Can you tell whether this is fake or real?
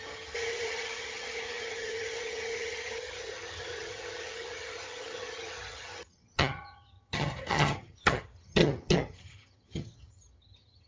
fake